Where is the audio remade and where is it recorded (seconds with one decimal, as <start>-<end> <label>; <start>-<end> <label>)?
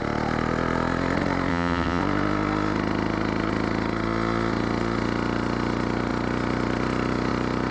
0.0-1.5 recorded; 1.5-2.0 remade; 2.0-7.7 recorded